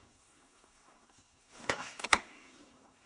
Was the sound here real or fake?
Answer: fake